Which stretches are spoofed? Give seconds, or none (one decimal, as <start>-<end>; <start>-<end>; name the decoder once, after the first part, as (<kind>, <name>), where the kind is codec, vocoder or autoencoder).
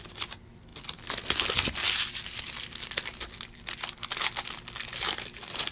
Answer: none